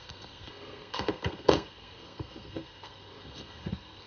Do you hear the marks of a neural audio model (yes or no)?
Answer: yes